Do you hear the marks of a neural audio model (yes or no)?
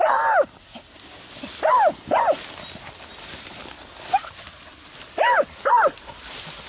no